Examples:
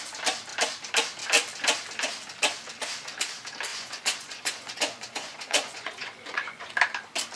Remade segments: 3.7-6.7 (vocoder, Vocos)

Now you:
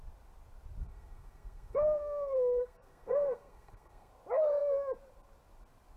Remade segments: 0.8-4.1 (codec, SNAC)

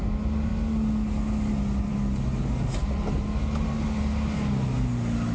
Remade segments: none

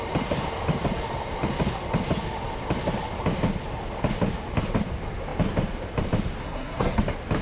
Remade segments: 6.4-7.0 (codec, SNAC)

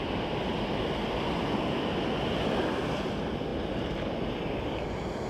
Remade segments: none